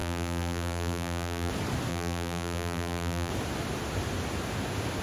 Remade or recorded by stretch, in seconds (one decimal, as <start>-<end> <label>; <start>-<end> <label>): 0.0-1.5 remade; 1.5-1.9 recorded; 1.9-3.3 remade; 3.3-5.0 recorded